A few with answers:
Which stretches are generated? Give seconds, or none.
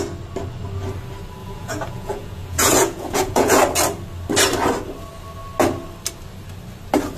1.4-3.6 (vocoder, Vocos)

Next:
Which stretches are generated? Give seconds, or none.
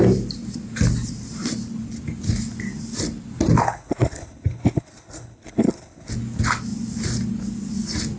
3.6-6.1 (codec, HILCodec)